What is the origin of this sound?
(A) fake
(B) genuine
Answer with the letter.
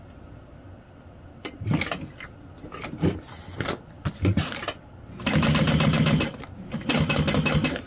B